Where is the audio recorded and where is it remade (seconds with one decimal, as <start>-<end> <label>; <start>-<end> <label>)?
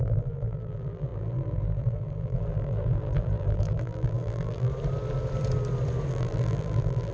0.0-4.7 remade; 4.7-6.1 recorded; 6.1-7.1 remade